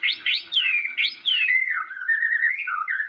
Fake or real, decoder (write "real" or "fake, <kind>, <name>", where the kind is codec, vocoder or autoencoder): fake, vocoder, HiFi-GAN